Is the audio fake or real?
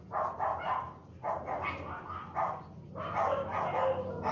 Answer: real